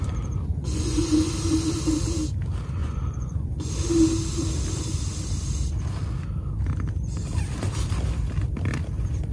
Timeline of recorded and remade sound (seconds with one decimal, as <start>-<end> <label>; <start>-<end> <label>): 0.0-0.5 recorded; 0.5-1.3 remade; 1.3-2.8 recorded; 2.8-3.7 remade; 3.7-9.3 recorded